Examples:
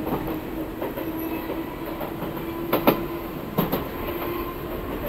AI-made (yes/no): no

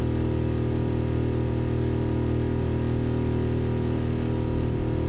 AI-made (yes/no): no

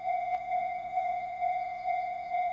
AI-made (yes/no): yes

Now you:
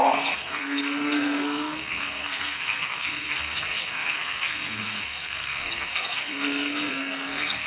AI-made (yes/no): yes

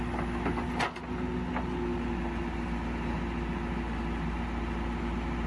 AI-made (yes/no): no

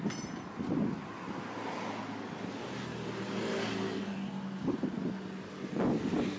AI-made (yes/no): no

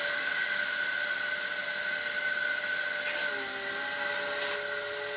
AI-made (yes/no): no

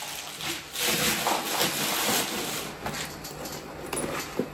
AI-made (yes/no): no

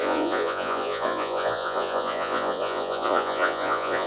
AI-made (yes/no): yes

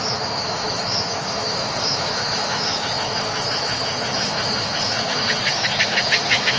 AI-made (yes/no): yes